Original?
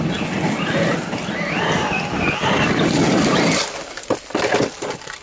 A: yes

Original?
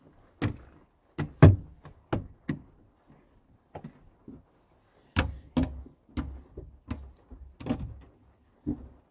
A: yes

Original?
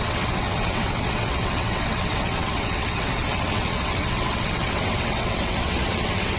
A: no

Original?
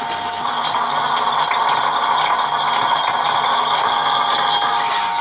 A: yes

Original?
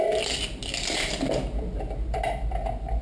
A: yes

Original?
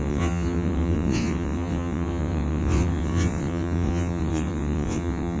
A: no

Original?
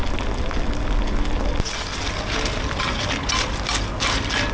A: yes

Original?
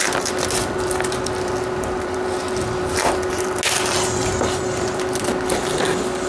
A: yes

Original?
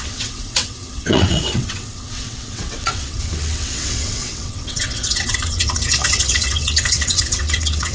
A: no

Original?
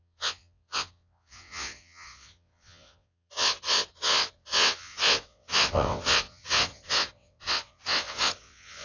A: no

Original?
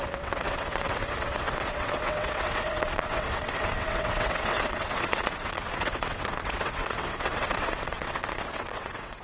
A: no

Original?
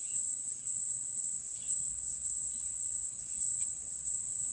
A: no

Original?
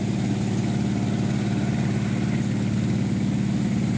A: yes